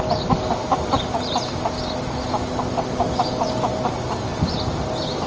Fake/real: real